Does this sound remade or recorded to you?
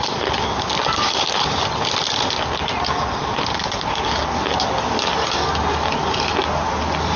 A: recorded